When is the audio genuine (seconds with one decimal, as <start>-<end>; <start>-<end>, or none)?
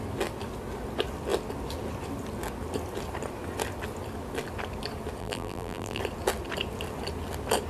0.0-5.2; 6.0-7.7